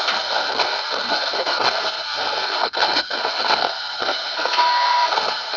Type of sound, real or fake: fake